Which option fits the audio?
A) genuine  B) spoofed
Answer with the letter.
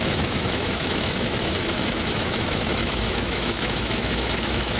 B